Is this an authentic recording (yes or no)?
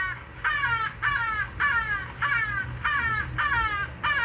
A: yes